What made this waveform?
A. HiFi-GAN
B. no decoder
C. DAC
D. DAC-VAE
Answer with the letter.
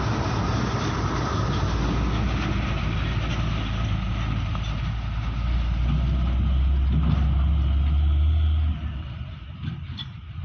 B